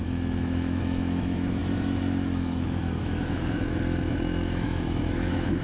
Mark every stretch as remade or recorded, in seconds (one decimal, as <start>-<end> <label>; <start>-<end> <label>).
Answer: 0.0-5.6 remade